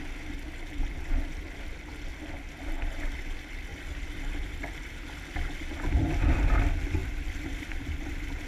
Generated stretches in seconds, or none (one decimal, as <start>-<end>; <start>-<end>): 3.7-4.6; 7.0-8.1

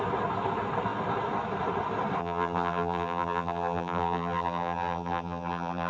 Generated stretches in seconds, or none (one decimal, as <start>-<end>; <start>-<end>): 2.2-5.9

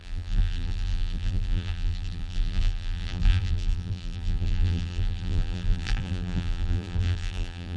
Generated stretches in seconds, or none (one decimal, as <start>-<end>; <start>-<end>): 0.0-7.8

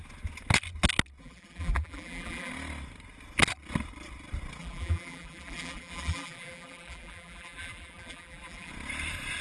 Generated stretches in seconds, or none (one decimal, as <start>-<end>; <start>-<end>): 1.2-2.5; 4.6-8.7

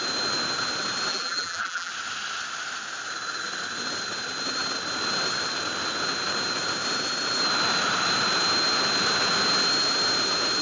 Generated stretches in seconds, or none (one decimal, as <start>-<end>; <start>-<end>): 1.1-1.9

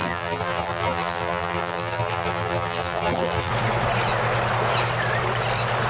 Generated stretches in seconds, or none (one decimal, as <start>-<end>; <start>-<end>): 0.0-3.5

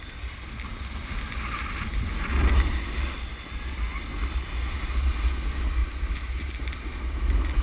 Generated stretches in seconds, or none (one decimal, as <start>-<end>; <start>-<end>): 5.8-6.4

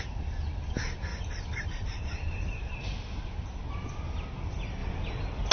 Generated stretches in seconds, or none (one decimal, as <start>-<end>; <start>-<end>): 1.1-3.6